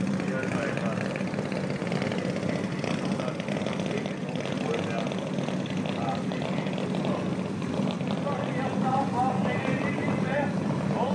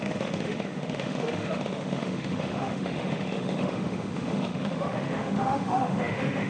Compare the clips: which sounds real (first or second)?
first